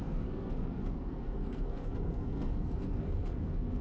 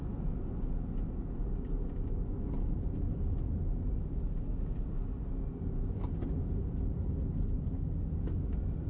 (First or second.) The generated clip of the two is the first